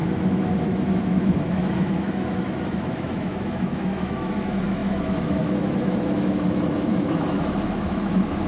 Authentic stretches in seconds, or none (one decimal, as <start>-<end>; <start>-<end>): none